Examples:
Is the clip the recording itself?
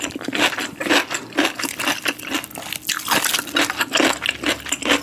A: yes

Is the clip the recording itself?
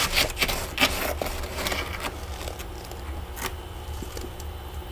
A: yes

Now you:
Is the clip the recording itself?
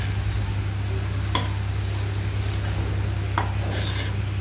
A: yes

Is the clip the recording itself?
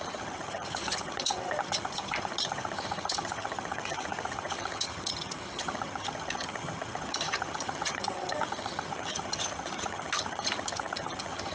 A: no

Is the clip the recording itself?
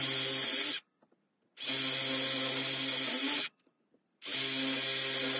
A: yes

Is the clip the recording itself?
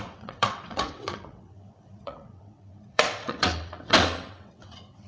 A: no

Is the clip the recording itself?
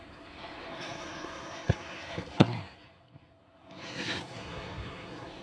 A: no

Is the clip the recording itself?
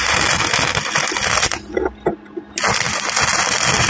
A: yes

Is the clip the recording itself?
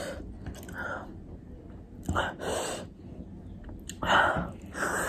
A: yes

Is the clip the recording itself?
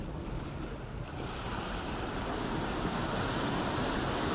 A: yes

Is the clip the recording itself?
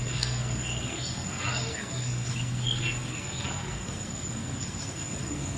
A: no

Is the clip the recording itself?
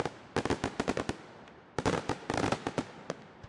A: no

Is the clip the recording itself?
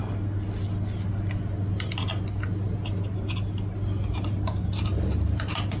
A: yes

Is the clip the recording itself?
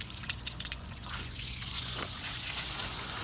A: no